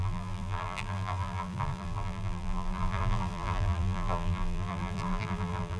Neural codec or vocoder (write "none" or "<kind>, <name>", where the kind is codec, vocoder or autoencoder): vocoder, BigVGAN v2